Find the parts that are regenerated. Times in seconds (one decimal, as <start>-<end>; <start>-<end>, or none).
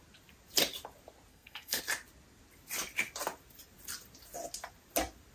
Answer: 1.3-1.8